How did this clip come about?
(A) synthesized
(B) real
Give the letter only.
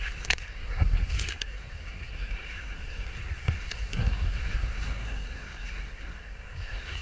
A